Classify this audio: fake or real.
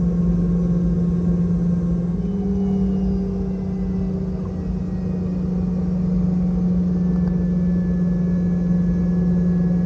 real